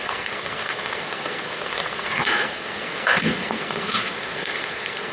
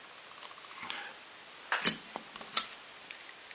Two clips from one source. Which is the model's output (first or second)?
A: first